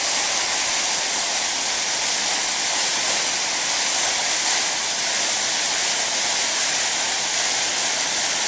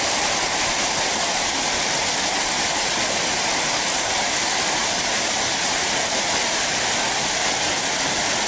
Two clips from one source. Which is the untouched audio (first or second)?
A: first